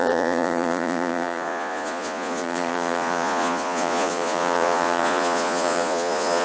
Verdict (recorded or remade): remade